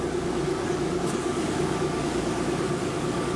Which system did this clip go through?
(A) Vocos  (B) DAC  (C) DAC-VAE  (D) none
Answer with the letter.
B